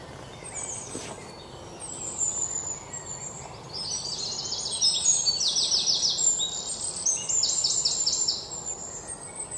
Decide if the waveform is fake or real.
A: real